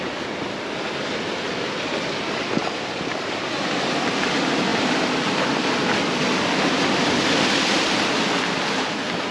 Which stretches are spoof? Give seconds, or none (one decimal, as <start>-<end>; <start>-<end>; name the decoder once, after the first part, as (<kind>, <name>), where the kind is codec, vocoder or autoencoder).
4.7-5.5 (vocoder, BigVGAN v2)